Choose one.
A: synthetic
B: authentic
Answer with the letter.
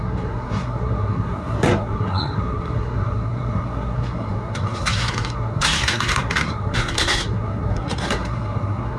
A